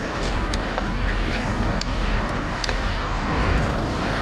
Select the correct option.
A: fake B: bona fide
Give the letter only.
A